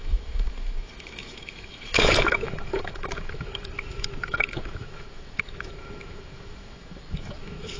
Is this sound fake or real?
fake